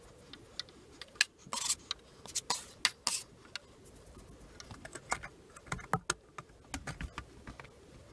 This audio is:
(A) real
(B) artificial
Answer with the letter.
A